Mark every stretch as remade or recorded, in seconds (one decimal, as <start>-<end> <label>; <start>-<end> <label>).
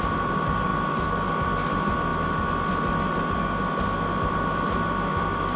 0.0-0.7 remade; 0.7-1.3 recorded; 1.3-2.1 remade; 2.1-4.2 recorded; 4.2-5.6 remade